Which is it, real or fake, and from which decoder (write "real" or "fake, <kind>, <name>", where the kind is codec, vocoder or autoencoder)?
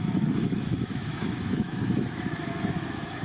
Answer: fake, autoencoder, DAC-VAE